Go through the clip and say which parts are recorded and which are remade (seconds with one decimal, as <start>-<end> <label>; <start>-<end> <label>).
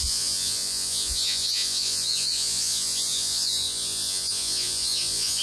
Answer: 0.0-5.4 remade